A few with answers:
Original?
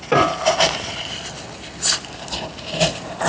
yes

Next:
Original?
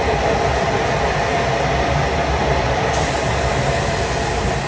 yes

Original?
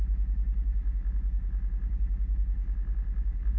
yes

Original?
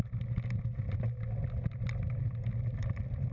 yes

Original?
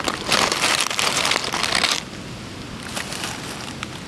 yes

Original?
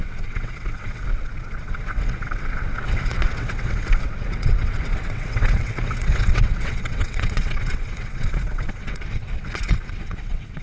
no